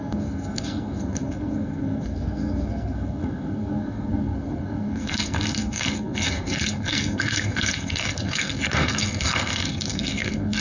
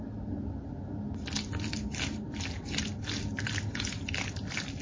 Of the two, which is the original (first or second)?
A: second